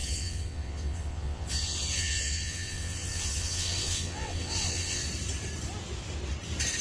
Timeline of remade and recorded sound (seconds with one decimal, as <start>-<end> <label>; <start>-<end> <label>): 0.0-5.0 remade; 5.0-6.8 recorded